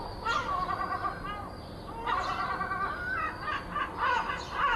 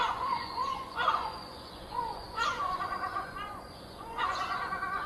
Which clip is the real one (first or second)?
first